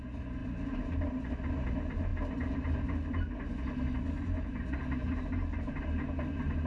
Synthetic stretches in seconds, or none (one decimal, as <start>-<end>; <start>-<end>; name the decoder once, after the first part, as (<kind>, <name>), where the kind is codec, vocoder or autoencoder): 0.4-1.3 (vocoder, BigVGAN v2)